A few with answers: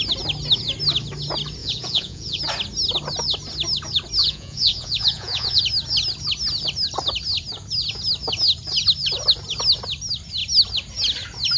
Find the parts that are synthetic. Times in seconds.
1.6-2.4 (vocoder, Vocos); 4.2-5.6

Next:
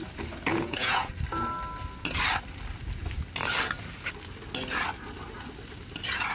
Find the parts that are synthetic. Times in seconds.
0.5-1.1 (vocoder, Vocos)

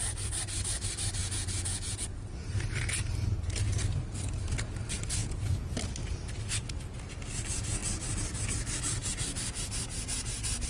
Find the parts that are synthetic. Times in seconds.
1.2-2.5 (vocoder, Vocos); 5.2-5.7